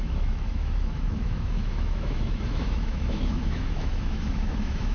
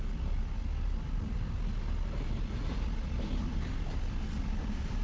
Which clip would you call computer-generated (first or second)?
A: first